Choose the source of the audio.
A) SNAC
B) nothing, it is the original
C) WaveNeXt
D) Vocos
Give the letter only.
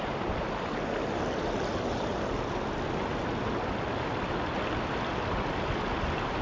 B